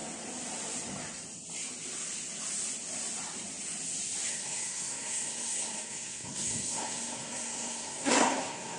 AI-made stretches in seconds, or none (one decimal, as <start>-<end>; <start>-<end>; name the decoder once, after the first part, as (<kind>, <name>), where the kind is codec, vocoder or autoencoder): 4.3-8.8 (codec, SNAC)

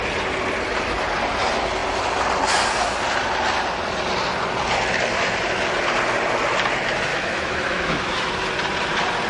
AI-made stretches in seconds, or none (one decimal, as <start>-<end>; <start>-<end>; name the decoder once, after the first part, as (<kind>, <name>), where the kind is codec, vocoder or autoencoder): 7.1-8.3 (autoencoder, DAC-VAE)

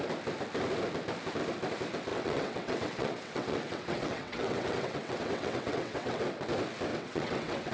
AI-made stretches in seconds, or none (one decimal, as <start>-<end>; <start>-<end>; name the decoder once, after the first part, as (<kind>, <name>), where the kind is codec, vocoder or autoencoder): 2.1-6.2 (vocoder, WaveNeXt); 6.9-7.7

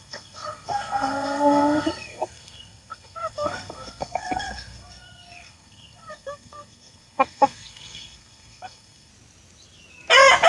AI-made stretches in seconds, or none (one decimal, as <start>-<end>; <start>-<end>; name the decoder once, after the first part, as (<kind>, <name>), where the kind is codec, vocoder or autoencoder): 0.0-9.1 (codec, SNAC)

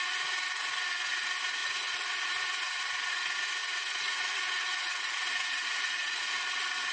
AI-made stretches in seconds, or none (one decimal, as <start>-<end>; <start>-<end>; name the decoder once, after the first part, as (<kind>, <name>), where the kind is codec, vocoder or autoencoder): 1.6-2.8 (vocoder, Vocos); 3.6-6.2